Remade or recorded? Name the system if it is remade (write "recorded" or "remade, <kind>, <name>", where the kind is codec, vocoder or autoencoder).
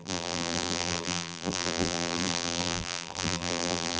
remade, vocoder, BigVGAN v2